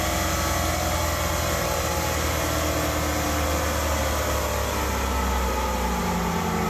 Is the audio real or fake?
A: real